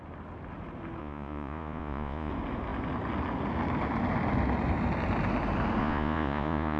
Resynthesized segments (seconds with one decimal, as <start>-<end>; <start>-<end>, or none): 1.0-2.3; 5.8-6.8